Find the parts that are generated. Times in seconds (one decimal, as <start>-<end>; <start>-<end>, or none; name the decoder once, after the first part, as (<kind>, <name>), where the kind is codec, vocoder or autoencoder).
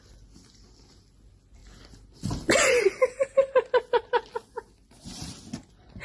none